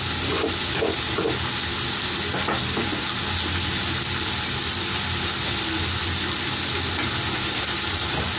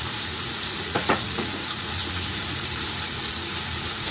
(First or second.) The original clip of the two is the first